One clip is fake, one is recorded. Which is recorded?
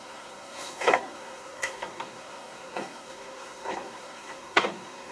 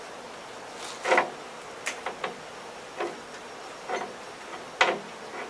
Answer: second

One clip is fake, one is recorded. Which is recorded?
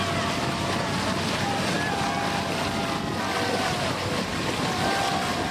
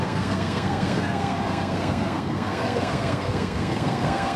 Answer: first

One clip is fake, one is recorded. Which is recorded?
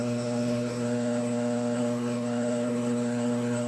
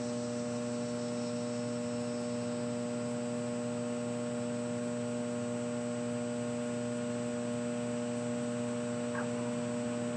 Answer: second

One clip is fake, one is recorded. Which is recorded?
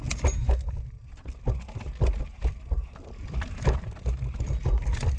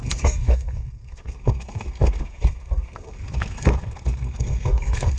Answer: first